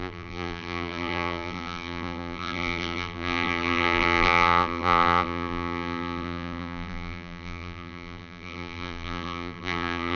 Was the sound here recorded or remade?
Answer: remade